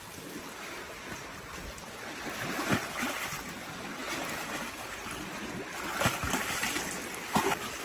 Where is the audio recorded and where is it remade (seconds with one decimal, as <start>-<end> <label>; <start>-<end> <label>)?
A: 0.0-7.8 recorded